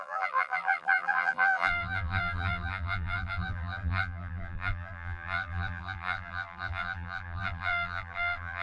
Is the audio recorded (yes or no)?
no